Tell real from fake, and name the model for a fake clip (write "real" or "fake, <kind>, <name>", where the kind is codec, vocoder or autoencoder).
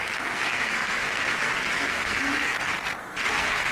fake, codec, SNAC